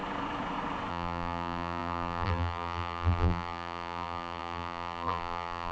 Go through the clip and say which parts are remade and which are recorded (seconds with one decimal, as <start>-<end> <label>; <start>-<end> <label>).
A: 0.0-0.9 recorded; 0.9-5.7 remade